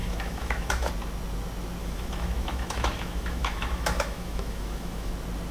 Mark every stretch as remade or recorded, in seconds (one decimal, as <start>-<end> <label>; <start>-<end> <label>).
0.0-0.9 remade; 0.9-1.8 recorded; 1.8-5.1 remade; 5.1-5.5 recorded